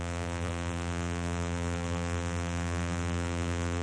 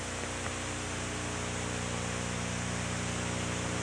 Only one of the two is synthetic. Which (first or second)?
first